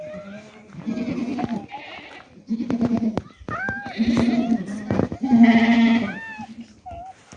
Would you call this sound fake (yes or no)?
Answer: no